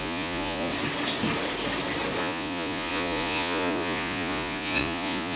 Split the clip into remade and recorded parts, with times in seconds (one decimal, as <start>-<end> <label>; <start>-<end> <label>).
0.0-0.7 remade; 0.7-2.2 recorded; 2.2-5.4 remade